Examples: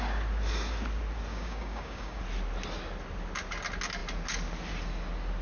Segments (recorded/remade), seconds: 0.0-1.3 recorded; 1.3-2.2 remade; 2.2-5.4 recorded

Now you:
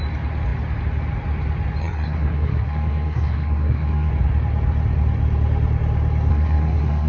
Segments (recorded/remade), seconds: 0.0-1.8 recorded; 1.8-4.1 remade; 4.1-6.3 recorded; 6.3-7.1 remade

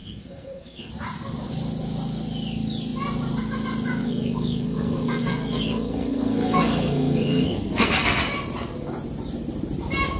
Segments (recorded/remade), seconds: 0.0-0.9 remade; 0.9-4.0 recorded; 4.0-8.2 remade; 8.2-10.2 recorded

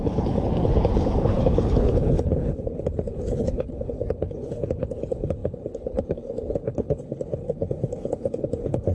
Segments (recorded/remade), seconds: 0.0-8.9 remade

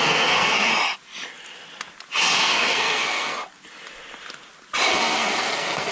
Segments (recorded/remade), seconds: 0.0-0.7 remade; 0.7-2.4 recorded; 2.4-3.4 remade; 3.4-4.9 recorded; 4.9-5.9 remade